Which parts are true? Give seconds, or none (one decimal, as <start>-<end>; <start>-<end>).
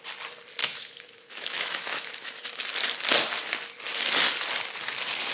0.0-0.6; 2.5-5.3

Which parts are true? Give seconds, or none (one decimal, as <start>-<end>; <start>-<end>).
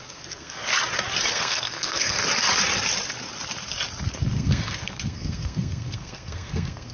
0.7-1.3; 2.2-4.2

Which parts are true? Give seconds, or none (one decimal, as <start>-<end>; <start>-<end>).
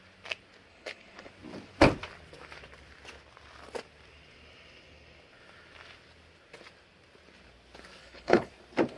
0.0-0.7; 1.3-8.0; 8.5-9.0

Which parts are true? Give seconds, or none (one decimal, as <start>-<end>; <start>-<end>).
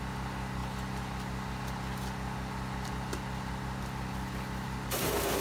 0.0-5.4